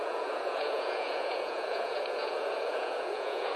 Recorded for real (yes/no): no